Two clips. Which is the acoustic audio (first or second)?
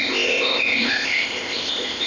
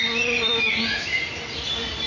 second